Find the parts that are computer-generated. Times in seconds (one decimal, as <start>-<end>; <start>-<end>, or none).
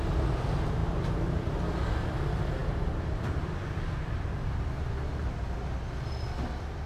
none